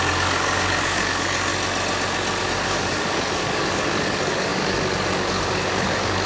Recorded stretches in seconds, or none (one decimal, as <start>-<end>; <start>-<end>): 1.5-2.4